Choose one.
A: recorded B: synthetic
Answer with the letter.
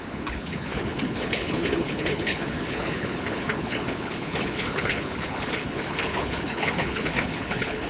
B